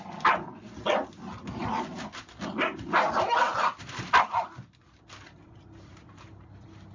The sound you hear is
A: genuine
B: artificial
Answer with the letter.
A